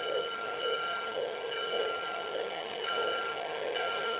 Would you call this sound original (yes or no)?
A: no